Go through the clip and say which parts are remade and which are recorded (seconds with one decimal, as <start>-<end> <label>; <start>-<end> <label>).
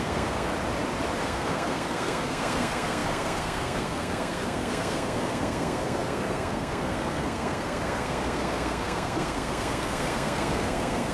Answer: 0.0-0.5 remade; 0.5-1.2 recorded; 1.2-11.1 remade